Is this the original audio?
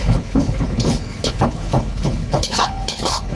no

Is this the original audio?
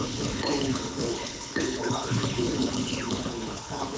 no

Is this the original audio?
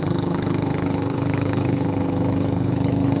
no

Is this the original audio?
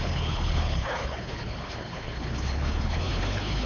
no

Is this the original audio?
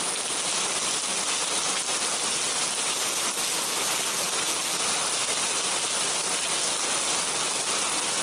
yes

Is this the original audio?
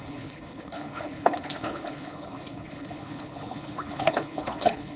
no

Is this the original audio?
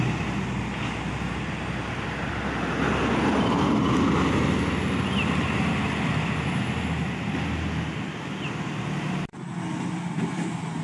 yes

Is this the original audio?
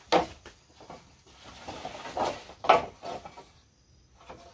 yes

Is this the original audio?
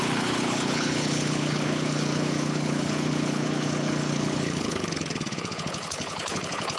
no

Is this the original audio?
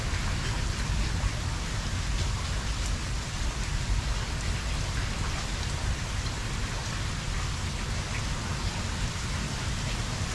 yes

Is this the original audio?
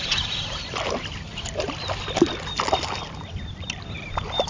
yes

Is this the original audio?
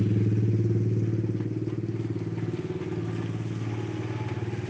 yes